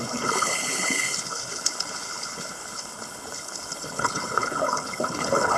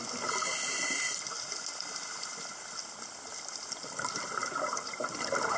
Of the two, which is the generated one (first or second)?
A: first